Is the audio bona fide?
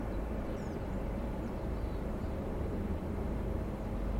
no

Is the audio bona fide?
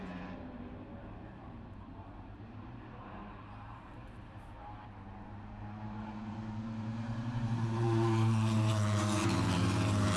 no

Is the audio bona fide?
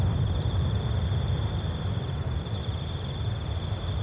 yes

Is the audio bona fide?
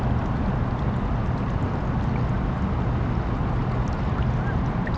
yes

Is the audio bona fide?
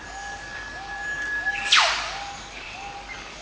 no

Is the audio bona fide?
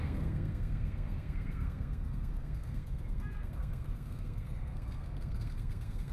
no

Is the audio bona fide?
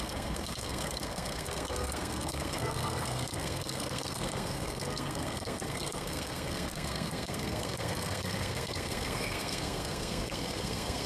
no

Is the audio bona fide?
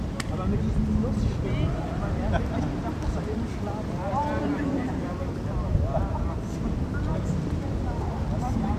yes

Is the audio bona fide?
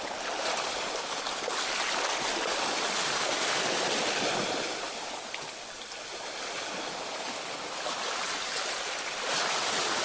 yes